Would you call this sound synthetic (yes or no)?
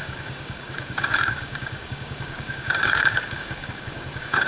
yes